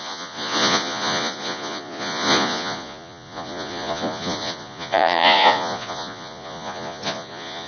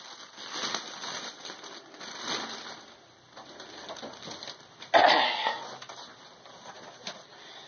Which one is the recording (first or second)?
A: second